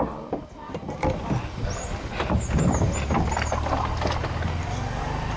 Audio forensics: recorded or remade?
recorded